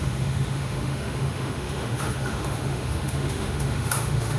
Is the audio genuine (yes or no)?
no